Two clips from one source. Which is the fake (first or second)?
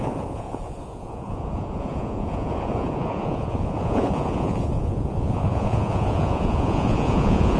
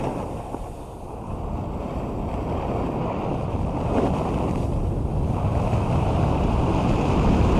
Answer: first